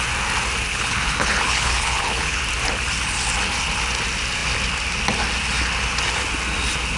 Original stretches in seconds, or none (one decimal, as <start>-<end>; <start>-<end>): 0.0-0.7; 2.4-7.0